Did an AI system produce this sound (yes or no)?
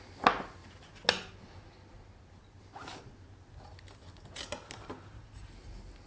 no